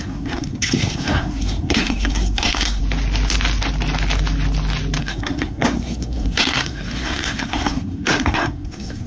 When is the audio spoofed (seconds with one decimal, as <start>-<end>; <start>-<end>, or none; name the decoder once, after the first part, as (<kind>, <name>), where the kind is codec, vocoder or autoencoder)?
0.0-2.8 (codec, SNAC); 5.0-9.1